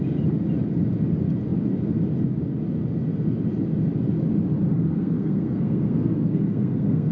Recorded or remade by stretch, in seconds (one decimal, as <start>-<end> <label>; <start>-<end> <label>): 0.0-4.8 recorded; 4.8-7.1 remade